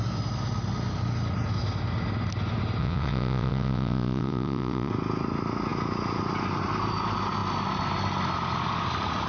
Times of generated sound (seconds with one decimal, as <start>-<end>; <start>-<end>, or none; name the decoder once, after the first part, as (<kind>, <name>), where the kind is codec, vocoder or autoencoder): 2.8-4.9 (vocoder, WaveNeXt)